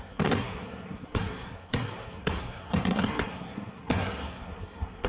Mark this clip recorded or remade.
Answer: remade